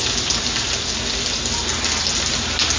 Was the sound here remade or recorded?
recorded